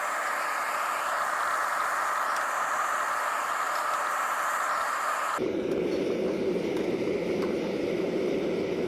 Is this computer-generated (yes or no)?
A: no